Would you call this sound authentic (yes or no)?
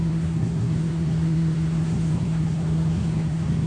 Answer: no